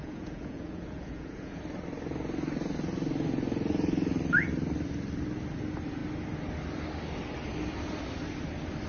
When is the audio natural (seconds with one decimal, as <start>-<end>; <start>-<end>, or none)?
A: 1.6-8.9